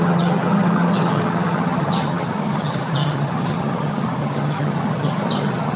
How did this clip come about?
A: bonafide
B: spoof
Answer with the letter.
B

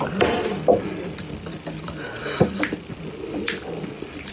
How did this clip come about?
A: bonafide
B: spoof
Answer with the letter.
A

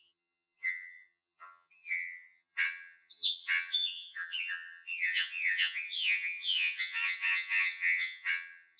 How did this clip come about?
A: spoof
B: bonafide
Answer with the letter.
A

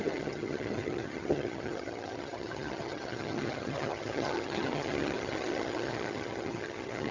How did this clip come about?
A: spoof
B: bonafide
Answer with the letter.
A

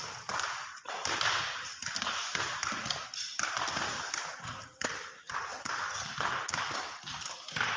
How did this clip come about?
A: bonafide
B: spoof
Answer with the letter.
A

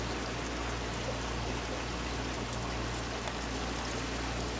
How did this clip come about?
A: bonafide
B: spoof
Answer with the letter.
A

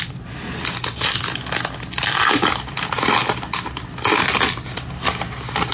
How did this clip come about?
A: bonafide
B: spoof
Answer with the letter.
A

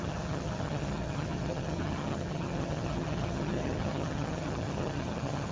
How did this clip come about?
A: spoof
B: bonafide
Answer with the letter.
A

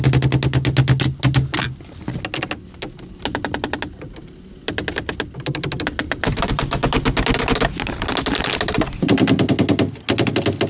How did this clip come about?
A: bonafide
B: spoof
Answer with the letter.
A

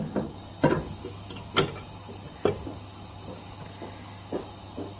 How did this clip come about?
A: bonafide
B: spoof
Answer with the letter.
A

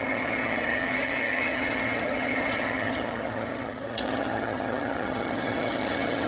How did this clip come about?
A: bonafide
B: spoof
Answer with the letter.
B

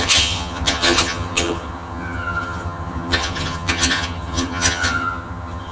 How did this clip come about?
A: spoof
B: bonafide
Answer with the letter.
A